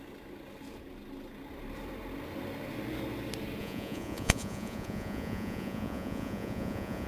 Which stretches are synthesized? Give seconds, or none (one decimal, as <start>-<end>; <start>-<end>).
3.6-7.1